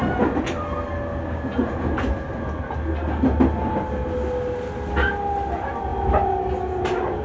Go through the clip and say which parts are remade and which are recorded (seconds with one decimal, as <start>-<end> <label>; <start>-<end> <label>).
0.0-7.2 recorded